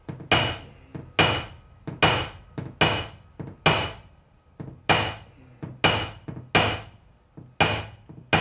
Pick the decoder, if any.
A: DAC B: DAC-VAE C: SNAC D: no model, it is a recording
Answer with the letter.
D